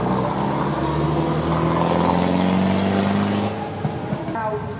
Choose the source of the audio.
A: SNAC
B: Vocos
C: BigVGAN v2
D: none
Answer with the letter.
D